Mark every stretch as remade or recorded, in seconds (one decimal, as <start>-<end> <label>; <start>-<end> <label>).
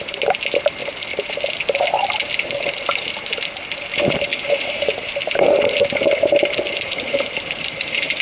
0.0-8.2 recorded